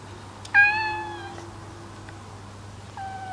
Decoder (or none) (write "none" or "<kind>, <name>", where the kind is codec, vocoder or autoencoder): none